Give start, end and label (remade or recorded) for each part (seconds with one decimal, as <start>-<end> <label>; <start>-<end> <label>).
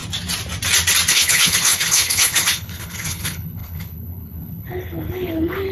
0.0-1.1 recorded; 1.1-5.7 remade